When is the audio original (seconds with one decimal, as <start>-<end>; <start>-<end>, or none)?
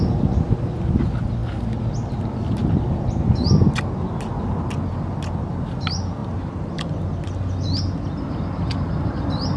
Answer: 0.0-9.6